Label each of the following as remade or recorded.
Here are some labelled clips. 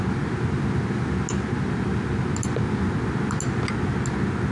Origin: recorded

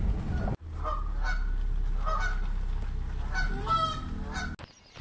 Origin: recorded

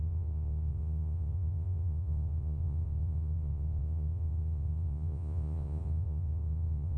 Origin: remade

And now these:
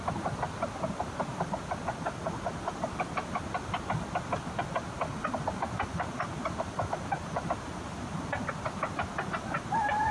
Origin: recorded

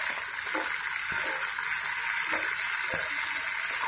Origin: recorded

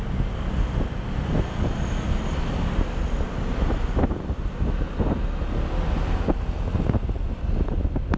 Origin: recorded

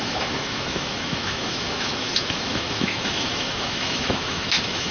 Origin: remade